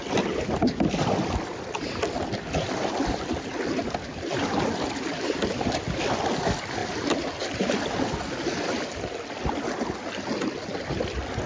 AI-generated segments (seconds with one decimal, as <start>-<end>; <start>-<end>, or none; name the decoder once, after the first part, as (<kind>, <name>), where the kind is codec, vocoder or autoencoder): none